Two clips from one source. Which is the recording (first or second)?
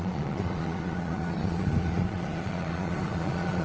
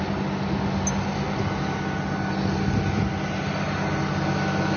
second